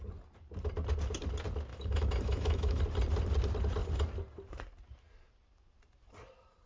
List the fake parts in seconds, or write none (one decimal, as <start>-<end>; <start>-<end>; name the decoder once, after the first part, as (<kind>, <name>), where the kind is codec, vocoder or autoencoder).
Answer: 1.7-2.8 (autoencoder, DAC-VAE)